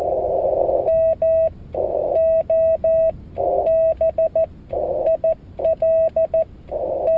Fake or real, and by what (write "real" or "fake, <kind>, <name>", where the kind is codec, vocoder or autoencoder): real